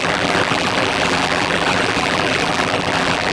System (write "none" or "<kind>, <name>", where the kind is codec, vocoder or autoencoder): vocoder, BigVGAN v2